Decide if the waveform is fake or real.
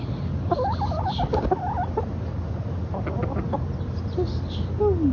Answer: real